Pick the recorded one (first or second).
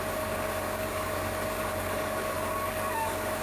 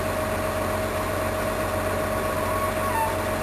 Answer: second